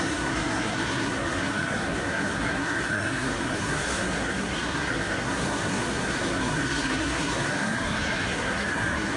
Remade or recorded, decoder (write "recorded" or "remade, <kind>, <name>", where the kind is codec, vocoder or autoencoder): remade, codec, SNAC